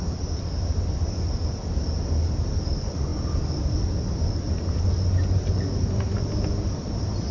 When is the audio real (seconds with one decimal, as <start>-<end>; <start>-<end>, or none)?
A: 0.0-7.3